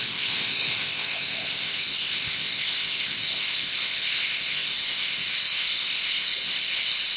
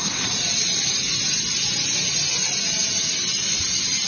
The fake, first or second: first